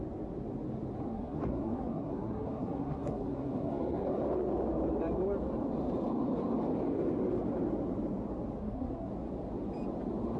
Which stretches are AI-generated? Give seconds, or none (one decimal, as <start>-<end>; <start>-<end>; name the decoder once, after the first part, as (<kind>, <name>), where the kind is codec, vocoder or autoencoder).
1.1-4.2 (codec, SNAC); 8.6-9.1